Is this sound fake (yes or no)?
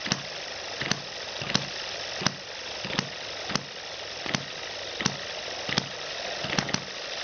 no